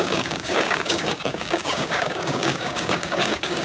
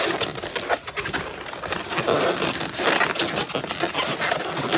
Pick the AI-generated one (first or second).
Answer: first